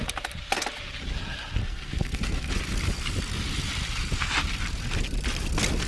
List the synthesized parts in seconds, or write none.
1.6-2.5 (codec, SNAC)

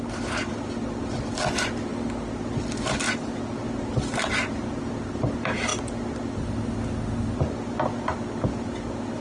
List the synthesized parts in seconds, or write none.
none